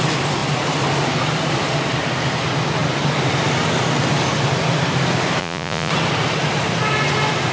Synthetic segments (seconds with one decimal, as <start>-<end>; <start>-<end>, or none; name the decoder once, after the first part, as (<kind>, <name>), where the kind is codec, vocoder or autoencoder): 5.4-5.9 (vocoder, Vocos)